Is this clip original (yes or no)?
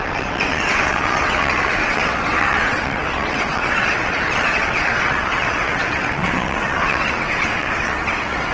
no